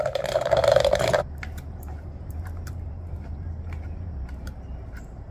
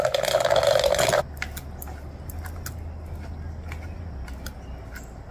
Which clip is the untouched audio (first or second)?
second